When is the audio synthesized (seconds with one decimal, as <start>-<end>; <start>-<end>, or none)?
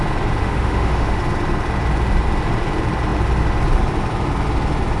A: 0.4-1.2